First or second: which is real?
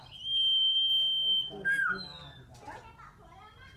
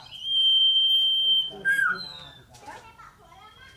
first